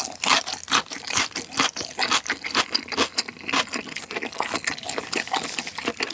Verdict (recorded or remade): recorded